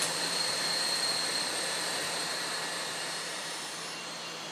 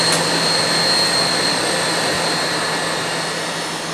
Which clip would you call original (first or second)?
second